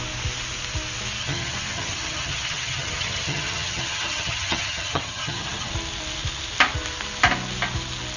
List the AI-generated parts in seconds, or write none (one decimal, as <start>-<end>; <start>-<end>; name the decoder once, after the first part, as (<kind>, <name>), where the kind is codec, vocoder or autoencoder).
1.2-5.7 (vocoder, HiFi-GAN)